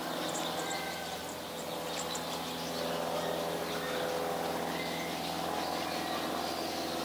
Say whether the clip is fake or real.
real